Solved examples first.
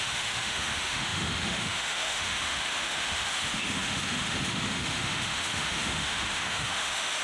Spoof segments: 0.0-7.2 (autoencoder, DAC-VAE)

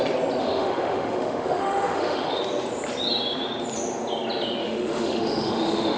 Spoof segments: 0.4-2.4 (autoencoder, DAC-VAE); 4.6-6.0

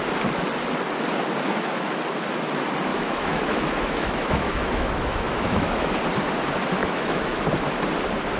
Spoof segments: 2.9-5.9 (autoencoder, DAC-VAE); 6.8-7.5

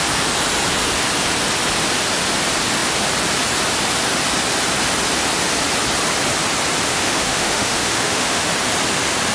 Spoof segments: 6.9-8.5 (autoencoder, DAC-VAE)

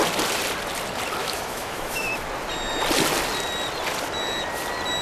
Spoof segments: 1.2-2.1 (autoencoder, DAC-VAE)

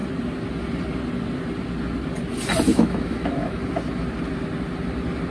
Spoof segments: 2.7-3.6 (autoencoder, DAC-VAE)

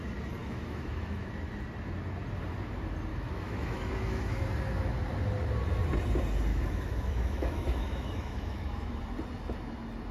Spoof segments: 0.4-1.3 (autoencoder, DAC-VAE); 3.1-4.4; 6.5-9.0

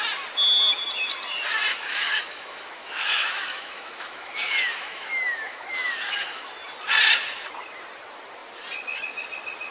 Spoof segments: 1.7-6.5 (autoencoder, DAC-VAE)